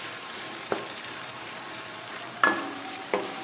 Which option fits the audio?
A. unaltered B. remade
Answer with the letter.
B